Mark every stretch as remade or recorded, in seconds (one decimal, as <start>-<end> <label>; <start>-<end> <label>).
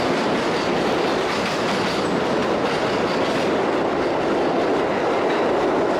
0.0-6.0 recorded